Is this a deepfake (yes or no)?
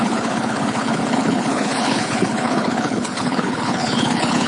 yes